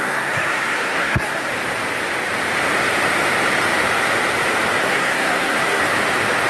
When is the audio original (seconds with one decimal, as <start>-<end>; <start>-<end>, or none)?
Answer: 1.5-4.8; 5.8-6.5